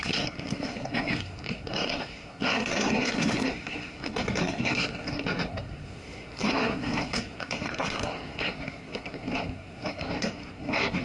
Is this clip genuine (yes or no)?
no